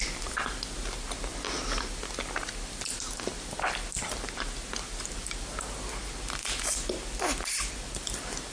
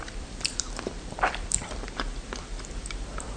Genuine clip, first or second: first